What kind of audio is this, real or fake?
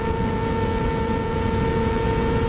fake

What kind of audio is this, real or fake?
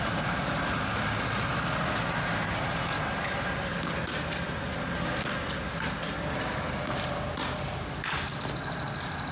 real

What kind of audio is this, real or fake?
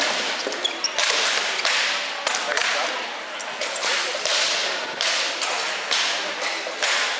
real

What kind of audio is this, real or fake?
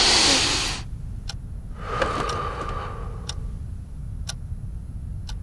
real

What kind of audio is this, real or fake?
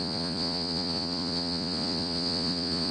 fake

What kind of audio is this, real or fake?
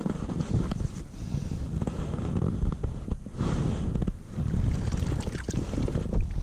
real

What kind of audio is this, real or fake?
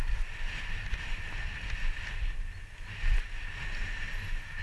real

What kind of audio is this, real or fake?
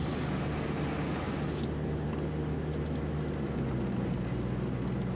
real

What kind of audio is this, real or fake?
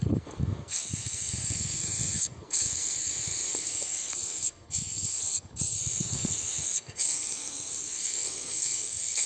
fake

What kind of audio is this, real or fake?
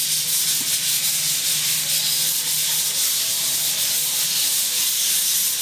real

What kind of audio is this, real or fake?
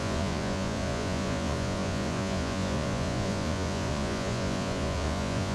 fake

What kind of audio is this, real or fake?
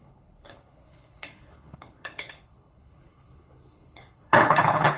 fake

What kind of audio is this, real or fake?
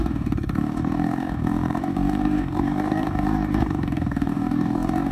fake